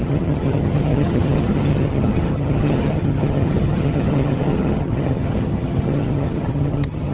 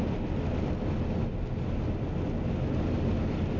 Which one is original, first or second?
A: second